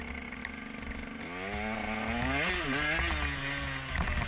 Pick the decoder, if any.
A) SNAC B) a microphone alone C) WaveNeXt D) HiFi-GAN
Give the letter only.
B